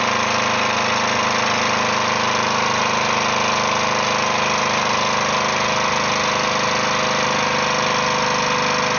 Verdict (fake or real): real